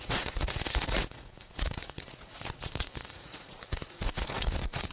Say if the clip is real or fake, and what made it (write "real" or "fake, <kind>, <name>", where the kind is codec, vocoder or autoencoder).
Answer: fake, vocoder, Vocos